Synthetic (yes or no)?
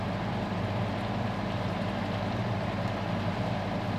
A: no